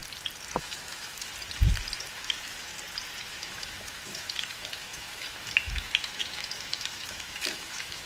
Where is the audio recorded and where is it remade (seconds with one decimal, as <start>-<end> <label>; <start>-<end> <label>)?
0.0-0.6 recorded; 0.6-1.3 remade; 1.3-2.0 recorded; 2.0-2.7 remade; 2.7-3.3 recorded; 3.3-8.1 remade